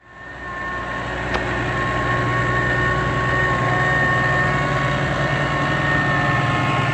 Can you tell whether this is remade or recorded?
recorded